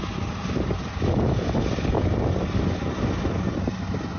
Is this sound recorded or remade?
recorded